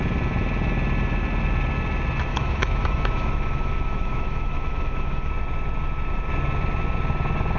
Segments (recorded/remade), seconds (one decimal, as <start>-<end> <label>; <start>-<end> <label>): 0.0-2.3 recorded; 2.3-5.3 remade; 5.3-7.6 recorded